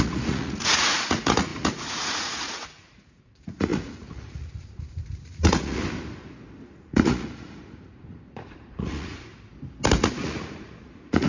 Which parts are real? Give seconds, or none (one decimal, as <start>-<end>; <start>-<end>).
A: 5.8-6.8; 9.3-10.0

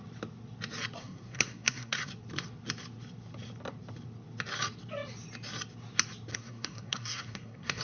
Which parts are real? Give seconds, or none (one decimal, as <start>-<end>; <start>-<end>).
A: 0.0-1.0; 2.1-6.3

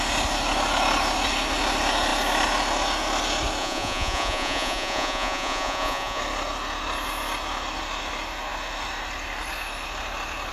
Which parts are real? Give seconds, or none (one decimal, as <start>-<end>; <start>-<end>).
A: 0.0-3.6; 6.2-10.5

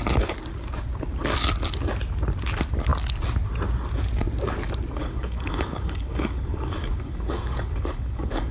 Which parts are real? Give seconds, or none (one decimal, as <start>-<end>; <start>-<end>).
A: 0.0-5.0

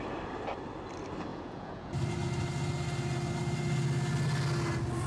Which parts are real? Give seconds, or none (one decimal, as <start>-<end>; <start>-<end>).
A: 0.0-1.3; 1.9-5.1

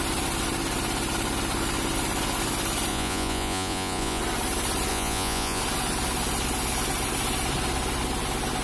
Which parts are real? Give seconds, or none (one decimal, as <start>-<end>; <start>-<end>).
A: 0.0-2.9; 4.2-4.9; 5.6-8.6

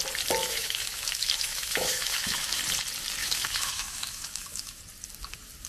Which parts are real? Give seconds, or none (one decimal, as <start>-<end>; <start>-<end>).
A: 0.0-0.4; 2.6-3.2; 4.8-5.7